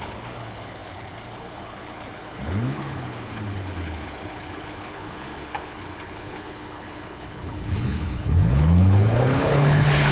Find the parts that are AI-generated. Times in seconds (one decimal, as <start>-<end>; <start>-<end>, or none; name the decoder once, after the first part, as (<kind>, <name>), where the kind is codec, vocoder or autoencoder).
0.0-10.1 (codec, HILCodec)